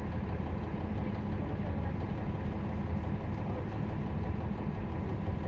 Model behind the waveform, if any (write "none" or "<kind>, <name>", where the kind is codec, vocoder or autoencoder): none